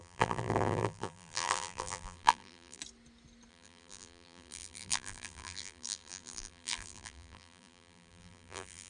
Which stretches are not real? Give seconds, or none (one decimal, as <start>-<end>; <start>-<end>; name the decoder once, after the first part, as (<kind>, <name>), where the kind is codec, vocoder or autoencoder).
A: 0.0-2.8 (vocoder, BigVGAN v2); 3.5-8.9